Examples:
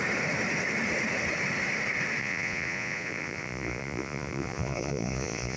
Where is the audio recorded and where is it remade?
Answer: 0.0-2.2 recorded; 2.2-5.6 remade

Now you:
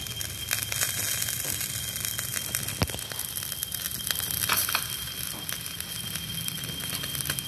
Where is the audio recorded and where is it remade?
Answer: 0.0-7.5 recorded

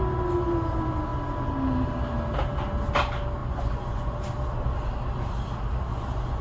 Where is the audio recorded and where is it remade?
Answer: 0.0-3.4 recorded; 3.4-4.1 remade; 4.1-5.9 recorded; 5.9-6.4 remade

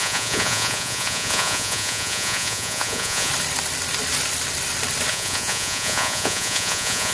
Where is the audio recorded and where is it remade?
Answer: 0.0-3.3 remade; 3.3-5.1 recorded; 5.1-7.1 remade